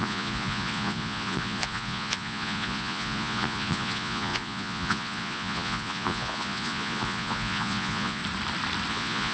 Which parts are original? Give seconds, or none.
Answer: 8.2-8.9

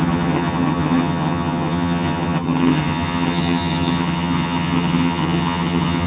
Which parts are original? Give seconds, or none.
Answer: none

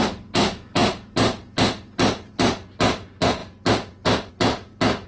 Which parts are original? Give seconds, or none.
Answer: 0.0-5.1

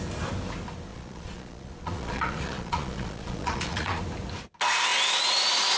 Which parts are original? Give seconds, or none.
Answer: 0.0-0.9; 4.0-5.8

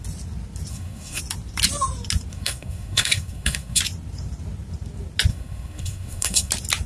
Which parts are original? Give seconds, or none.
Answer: 0.0-0.7; 1.2-2.3; 3.8-5.3; 6.5-6.9

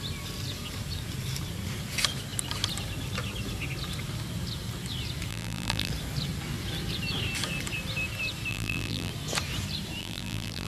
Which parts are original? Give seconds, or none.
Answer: 0.0-5.3; 5.9-8.5; 9.1-10.0

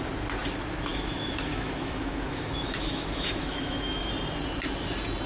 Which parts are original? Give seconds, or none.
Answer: 0.0-0.9; 4.1-5.3

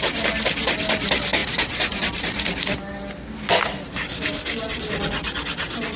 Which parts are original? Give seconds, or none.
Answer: 0.0-6.0